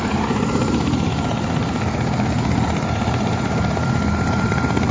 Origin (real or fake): fake